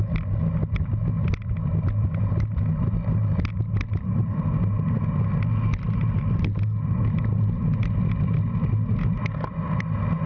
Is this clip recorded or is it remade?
recorded